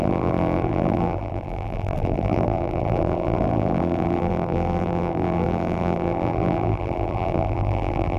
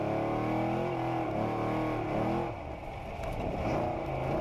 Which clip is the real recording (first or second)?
second